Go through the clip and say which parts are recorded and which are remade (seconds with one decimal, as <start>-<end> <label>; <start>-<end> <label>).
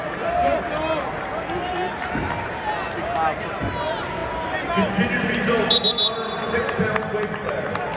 0.0-8.0 recorded